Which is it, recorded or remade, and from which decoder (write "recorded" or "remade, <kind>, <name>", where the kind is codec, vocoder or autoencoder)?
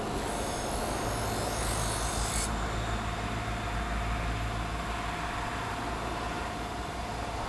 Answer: recorded